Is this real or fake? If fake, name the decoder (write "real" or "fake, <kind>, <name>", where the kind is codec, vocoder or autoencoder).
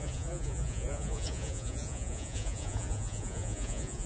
fake, vocoder, Vocos